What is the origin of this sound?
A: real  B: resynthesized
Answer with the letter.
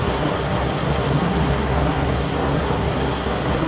B